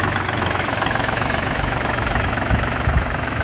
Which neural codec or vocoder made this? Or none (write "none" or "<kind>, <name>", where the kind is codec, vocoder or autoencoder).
autoencoder, DAC-VAE